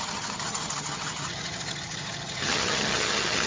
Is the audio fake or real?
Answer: fake